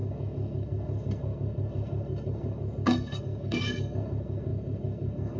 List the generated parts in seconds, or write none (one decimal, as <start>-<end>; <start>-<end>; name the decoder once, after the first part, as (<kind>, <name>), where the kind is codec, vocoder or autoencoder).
0.0-5.4 (codec, SNAC)